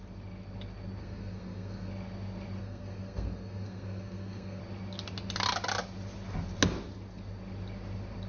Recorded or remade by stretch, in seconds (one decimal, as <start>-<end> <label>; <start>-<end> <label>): 0.0-1.0 recorded; 1.0-1.9 remade; 1.9-2.6 recorded; 2.6-4.6 remade; 4.6-8.3 recorded